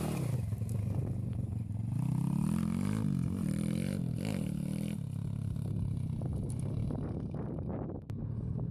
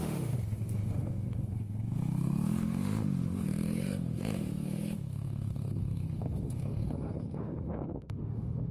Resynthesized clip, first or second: second